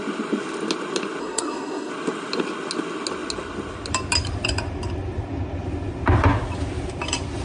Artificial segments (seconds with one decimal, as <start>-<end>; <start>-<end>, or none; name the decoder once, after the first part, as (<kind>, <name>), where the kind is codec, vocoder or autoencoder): 1.2-1.9 (codec, SNAC)